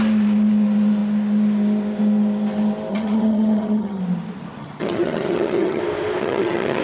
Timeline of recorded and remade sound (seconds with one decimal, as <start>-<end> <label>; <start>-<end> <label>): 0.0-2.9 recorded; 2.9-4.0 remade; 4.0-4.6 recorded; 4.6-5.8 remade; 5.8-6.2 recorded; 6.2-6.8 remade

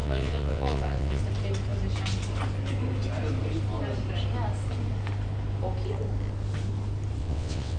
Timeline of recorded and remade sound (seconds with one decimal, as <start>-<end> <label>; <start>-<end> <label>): 0.0-1.2 remade; 1.2-7.2 recorded; 7.2-7.8 remade

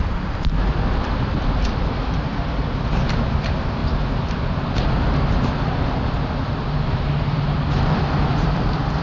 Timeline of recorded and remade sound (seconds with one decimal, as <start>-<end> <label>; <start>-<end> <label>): 0.0-3.8 remade; 3.8-4.8 recorded; 4.8-9.0 remade

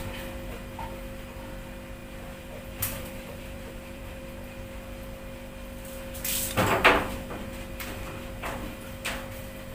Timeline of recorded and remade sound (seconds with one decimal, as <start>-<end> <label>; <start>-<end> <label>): 0.0-2.0 recorded; 2.0-4.2 remade; 4.2-9.7 recorded

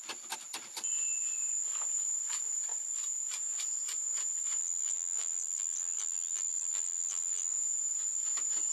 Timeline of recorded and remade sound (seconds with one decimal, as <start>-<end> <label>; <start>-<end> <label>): 0.0-4.6 recorded; 4.6-7.5 remade; 7.5-8.7 recorded

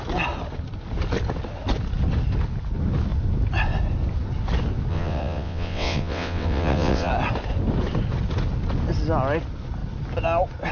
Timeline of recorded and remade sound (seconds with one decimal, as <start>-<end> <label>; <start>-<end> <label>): 0.0-4.9 recorded; 4.9-7.1 remade; 7.1-10.7 recorded